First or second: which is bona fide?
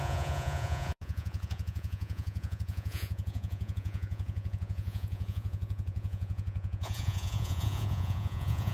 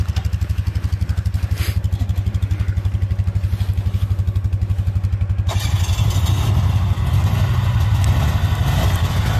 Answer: second